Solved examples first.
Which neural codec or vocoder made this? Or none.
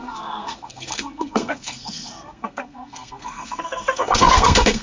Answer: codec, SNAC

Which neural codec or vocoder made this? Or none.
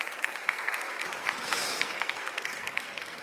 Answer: codec, SNAC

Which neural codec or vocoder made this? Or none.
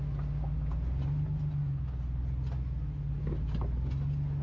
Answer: none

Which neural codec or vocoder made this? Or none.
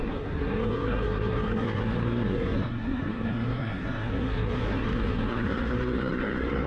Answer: codec, SNAC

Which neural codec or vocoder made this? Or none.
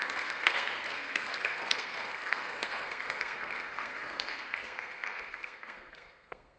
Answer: codec, SNAC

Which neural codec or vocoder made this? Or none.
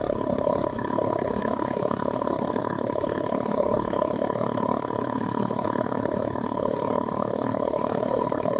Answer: codec, SNAC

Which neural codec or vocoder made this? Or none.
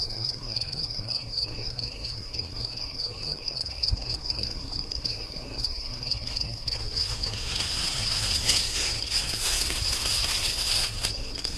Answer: codec, SNAC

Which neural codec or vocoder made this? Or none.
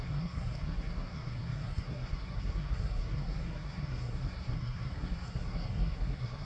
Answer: codec, SNAC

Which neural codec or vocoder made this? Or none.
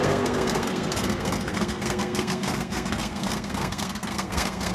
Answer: codec, SNAC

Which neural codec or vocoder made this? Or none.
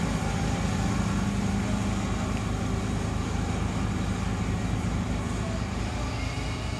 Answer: none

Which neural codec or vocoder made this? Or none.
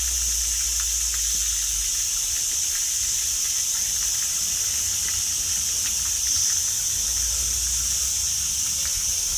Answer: none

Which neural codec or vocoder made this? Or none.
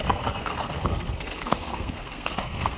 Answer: codec, SNAC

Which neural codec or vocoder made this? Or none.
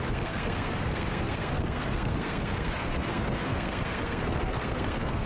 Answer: codec, SNAC